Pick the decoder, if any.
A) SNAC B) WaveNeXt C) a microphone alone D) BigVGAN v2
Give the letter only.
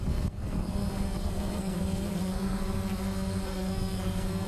A